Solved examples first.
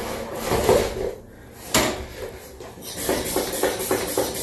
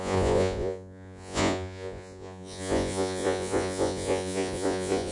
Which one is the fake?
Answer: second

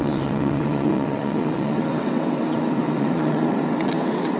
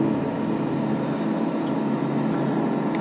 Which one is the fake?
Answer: first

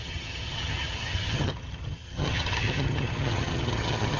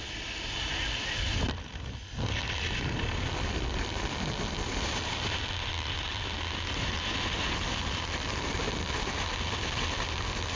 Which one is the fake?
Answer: first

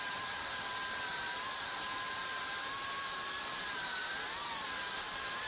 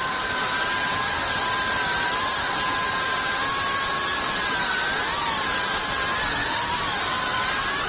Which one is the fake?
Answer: first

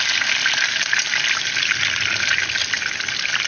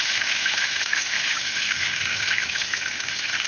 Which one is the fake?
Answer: second